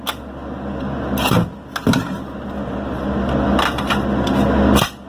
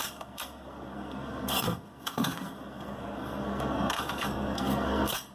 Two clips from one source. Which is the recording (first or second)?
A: first